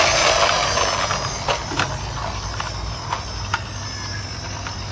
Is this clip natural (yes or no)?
yes